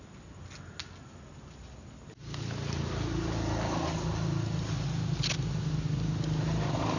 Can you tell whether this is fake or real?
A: real